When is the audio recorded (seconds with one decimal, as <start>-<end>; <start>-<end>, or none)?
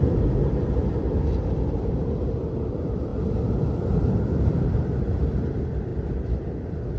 0.0-7.0